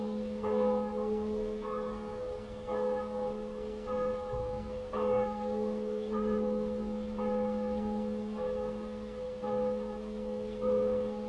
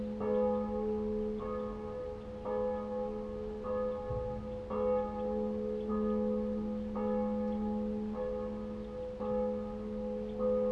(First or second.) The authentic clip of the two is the second